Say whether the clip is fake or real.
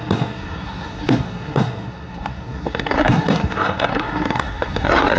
fake